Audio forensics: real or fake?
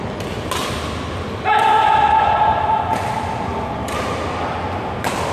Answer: real